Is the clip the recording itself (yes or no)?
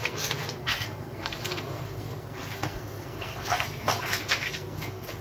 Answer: no